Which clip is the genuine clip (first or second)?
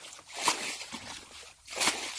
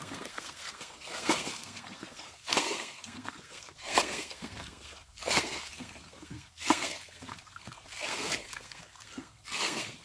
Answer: first